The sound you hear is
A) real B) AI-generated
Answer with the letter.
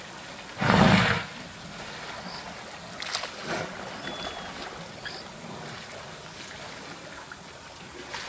A